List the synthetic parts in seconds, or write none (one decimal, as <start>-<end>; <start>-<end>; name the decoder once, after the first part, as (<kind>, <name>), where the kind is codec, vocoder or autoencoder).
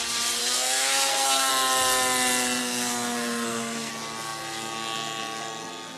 0.4-1.5 (codec, SNAC); 2.6-3.9